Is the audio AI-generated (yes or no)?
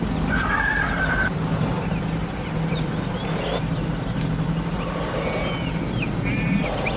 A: no